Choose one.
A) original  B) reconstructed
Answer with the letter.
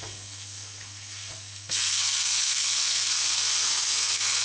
B